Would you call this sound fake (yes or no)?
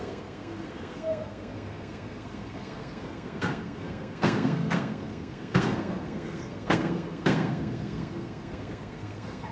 yes